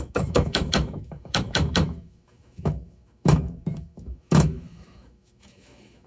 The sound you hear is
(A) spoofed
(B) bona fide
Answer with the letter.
A